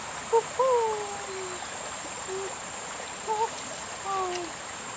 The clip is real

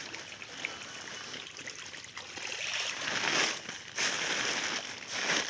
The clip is real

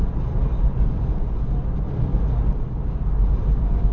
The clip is real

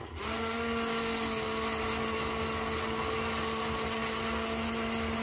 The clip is real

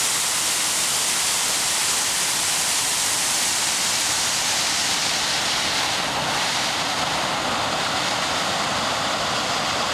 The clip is fake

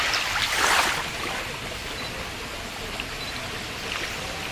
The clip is real